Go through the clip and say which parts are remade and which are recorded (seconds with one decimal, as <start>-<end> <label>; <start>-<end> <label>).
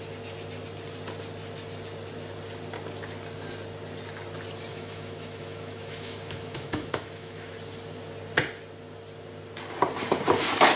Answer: 0.0-4.7 recorded; 4.7-7.5 remade; 7.5-10.8 recorded